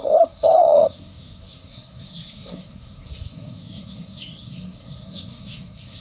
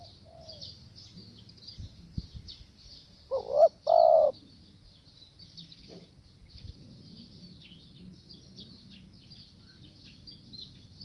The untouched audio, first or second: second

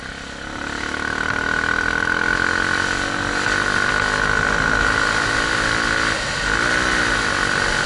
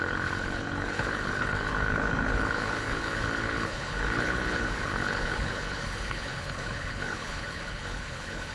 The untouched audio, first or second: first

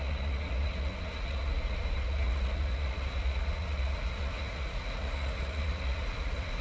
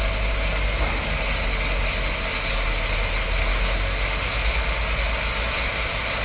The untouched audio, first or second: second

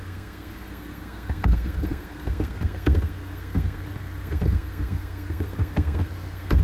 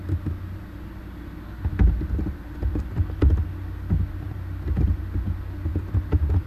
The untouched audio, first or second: second